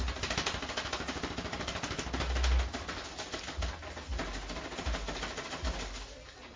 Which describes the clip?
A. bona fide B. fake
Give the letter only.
A